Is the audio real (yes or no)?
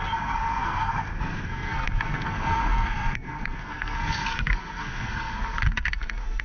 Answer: no